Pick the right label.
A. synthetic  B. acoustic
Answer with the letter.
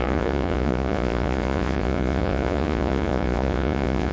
A